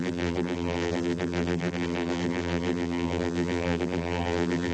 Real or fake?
fake